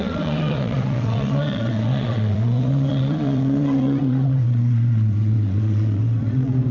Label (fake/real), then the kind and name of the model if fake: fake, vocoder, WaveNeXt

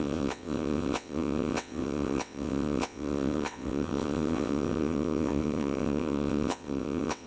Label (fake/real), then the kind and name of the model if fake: fake, vocoder, WaveNeXt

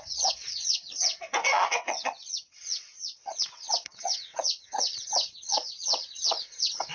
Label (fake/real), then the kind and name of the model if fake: fake, vocoder, WaveNeXt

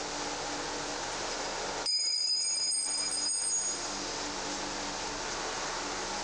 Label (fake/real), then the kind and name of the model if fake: real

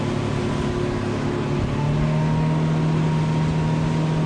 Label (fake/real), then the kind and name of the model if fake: real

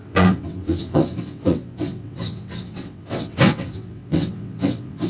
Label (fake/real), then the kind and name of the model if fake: fake, vocoder, WaveNeXt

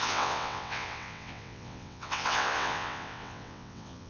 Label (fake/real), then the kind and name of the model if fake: fake, vocoder, WaveNeXt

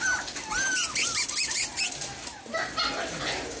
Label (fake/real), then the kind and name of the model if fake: real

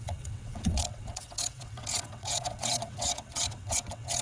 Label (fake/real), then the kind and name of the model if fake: fake, vocoder, WaveNeXt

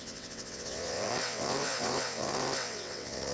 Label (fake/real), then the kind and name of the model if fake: fake, vocoder, WaveNeXt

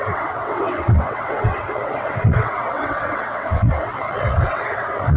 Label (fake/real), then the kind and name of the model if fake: fake, vocoder, WaveNeXt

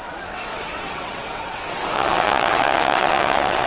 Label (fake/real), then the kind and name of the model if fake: fake, vocoder, WaveNeXt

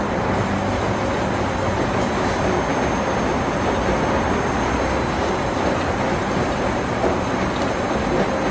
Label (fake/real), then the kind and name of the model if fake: real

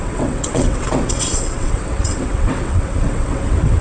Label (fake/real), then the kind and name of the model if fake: fake, vocoder, WaveNeXt